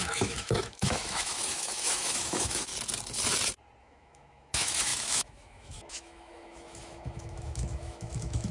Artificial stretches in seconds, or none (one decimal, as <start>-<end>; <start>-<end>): 0.0-2.7; 3.8-8.5